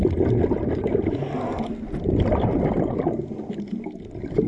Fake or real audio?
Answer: real